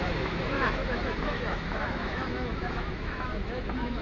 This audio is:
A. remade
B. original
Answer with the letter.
A